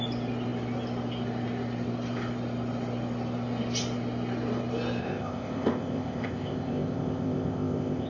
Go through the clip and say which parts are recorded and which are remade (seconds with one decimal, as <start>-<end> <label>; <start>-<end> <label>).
0.0-5.0 recorded; 5.0-8.1 remade